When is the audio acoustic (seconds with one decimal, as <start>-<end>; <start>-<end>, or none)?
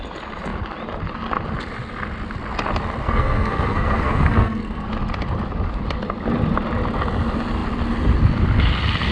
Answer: 0.0-3.0; 4.9-9.1